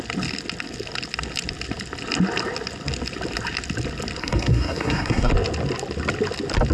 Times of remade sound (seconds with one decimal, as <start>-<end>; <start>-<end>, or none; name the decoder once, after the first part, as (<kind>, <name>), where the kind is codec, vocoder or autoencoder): 4.2-5.3 (codec, SNAC)